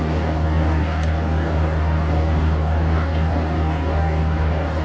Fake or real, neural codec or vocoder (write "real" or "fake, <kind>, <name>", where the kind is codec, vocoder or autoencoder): fake, codec, DAC